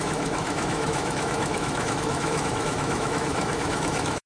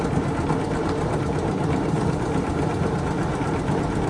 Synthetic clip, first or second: first